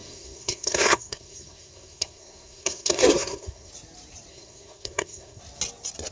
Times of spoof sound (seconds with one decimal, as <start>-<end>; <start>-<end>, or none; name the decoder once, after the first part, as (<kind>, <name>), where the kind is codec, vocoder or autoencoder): 0.0-3.7 (codec, SNAC); 4.3-5.4